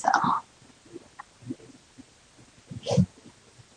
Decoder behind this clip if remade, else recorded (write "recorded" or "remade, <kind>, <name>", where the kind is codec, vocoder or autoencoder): recorded